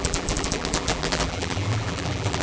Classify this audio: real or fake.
fake